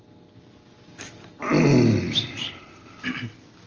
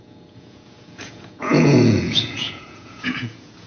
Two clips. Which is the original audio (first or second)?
first